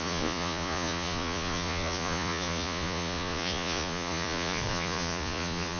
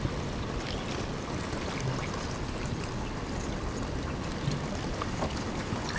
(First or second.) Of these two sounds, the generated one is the first